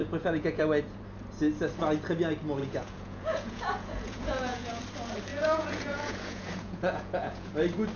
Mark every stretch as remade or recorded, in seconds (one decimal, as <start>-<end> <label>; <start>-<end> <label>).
0.0-0.6 remade; 0.6-2.6 recorded; 2.6-4.8 remade; 4.8-5.3 recorded; 5.3-7.5 remade; 7.5-8.0 recorded